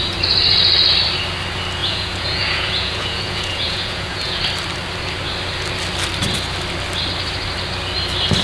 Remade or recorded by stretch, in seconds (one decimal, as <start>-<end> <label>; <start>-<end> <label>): 0.0-1.8 recorded; 1.8-4.4 remade; 4.4-8.4 recorded